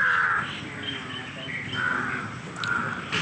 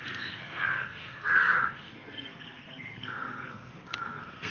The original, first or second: first